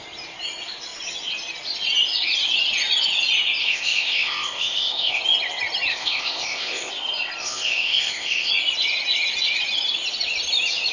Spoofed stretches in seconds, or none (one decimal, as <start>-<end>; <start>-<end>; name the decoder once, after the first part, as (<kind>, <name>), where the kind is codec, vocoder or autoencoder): 3.6-5.2 (codec, ZipCodec); 5.9-6.9; 7.4-8.5